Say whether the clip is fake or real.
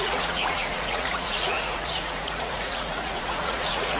fake